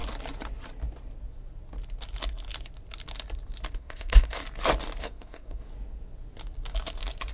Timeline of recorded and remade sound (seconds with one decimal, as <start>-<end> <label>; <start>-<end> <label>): 0.0-3.7 recorded; 3.7-4.4 remade; 4.4-5.0 recorded; 5.0-5.7 remade; 5.7-7.3 recorded